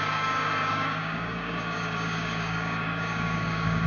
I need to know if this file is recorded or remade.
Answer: remade